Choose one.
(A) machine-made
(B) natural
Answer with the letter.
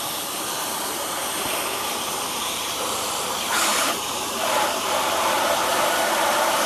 A